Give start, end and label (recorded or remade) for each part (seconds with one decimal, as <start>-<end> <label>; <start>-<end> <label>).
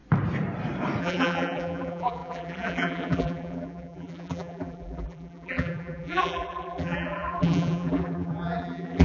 0.0-1.0 recorded; 1.0-9.0 remade